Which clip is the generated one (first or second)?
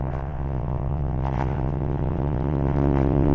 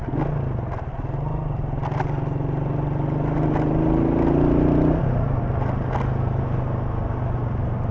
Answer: first